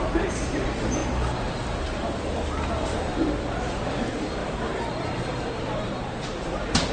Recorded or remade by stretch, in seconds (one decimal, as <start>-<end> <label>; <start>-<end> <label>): 0.0-3.1 remade; 3.1-4.0 recorded; 4.0-6.9 remade